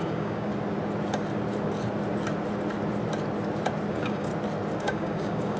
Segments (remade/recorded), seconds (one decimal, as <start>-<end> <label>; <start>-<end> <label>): 0.0-0.5 remade; 0.5-3.9 recorded; 3.9-4.3 remade; 4.3-4.8 recorded; 4.8-5.6 remade